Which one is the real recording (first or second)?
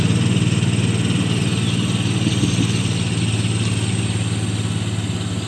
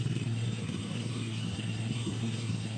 first